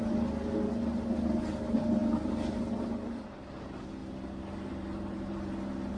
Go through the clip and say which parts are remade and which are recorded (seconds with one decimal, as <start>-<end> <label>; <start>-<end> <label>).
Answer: 0.0-6.0 recorded